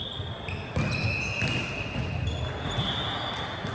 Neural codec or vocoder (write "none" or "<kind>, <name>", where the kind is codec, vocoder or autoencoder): none